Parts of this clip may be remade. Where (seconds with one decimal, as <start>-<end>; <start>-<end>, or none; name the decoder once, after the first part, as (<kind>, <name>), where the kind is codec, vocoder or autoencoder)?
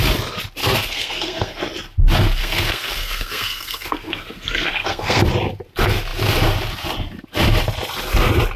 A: 0.6-1.6 (codec, SNAC); 2.4-5.2